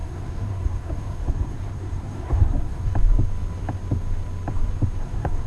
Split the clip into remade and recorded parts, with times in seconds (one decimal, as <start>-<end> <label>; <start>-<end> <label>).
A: 0.0-2.9 remade; 2.9-5.0 recorded; 5.0-5.5 remade

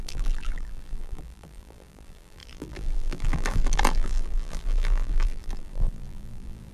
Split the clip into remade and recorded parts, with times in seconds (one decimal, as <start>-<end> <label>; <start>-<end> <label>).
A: 0.0-6.7 remade

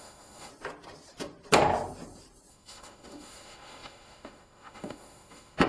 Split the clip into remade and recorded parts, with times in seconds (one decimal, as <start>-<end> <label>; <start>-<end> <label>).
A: 0.0-0.5 remade; 0.5-2.5 recorded; 2.5-5.7 remade

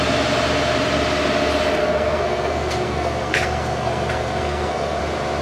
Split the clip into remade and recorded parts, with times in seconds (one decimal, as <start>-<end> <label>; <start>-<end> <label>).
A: 0.0-1.8 recorded; 1.8-5.0 remade; 5.0-5.4 recorded

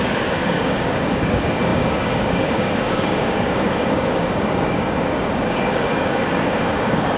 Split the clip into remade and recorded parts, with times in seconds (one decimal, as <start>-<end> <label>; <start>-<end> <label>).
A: 0.0-7.2 remade

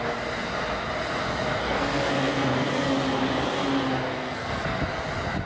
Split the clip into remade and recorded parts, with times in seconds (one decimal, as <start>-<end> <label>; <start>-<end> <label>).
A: 0.0-1.6 recorded; 1.6-2.9 remade; 2.9-4.1 recorded; 4.1-4.8 remade; 4.8-5.5 recorded

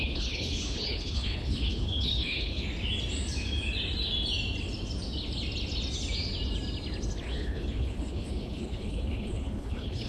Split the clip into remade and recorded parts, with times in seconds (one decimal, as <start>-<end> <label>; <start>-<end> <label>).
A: 0.0-2.6 remade; 2.6-7.2 recorded; 7.2-10.1 remade

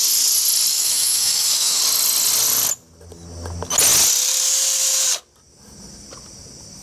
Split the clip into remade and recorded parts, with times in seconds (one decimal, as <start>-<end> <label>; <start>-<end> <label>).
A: 0.0-0.7 recorded; 0.7-1.8 remade; 1.8-6.8 recorded